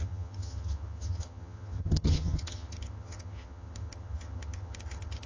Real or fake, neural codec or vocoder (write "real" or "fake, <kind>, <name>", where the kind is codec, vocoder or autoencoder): fake, vocoder, HiFi-GAN